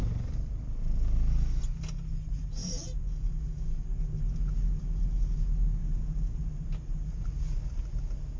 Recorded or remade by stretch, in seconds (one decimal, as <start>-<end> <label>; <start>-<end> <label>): 0.0-5.8 recorded; 5.8-6.4 remade; 6.4-8.4 recorded